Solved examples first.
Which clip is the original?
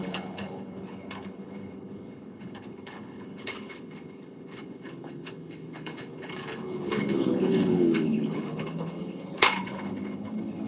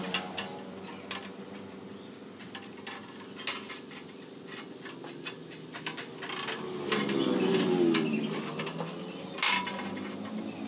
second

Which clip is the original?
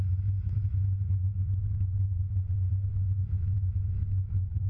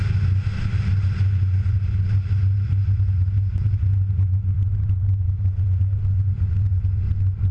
second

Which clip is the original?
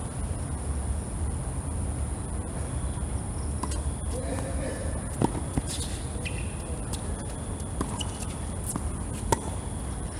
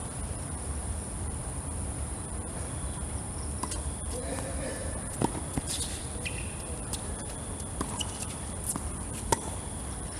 first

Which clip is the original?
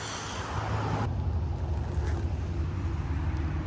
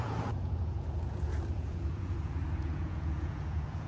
first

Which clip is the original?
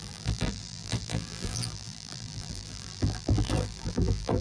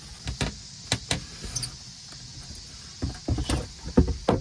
second